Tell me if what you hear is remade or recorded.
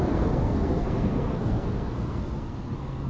remade